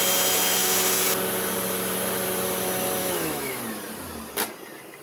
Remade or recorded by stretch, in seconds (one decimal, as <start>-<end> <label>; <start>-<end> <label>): 0.0-3.0 recorded; 3.0-3.6 remade; 3.6-5.0 recorded